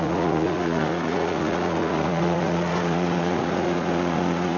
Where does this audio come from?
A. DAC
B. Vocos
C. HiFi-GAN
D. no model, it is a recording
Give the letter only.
B